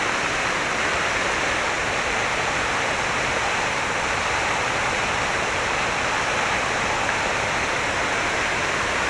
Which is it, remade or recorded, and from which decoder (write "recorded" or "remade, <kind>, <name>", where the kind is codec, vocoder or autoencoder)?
recorded